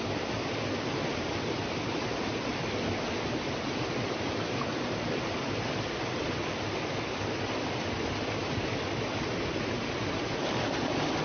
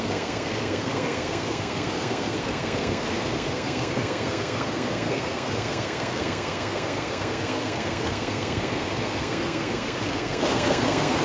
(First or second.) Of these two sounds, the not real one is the second